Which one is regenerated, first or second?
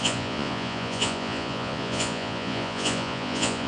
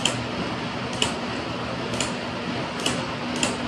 first